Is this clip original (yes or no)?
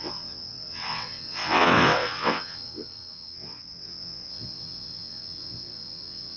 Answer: no